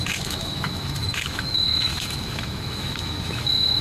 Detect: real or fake fake